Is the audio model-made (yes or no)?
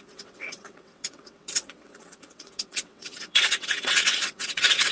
yes